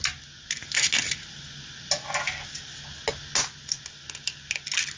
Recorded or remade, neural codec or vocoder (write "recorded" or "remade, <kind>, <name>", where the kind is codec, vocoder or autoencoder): recorded